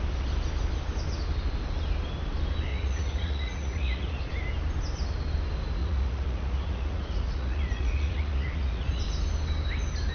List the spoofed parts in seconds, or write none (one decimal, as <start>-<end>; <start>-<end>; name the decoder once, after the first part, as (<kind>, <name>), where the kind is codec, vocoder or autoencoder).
2.7-4.3 (vocoder, Vocos); 5.8-9.0